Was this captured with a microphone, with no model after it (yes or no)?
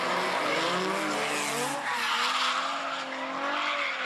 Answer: yes